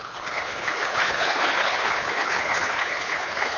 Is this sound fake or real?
fake